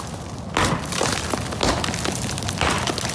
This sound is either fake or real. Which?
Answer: real